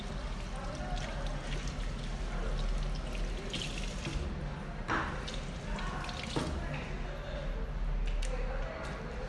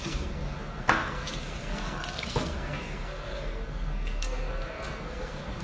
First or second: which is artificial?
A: second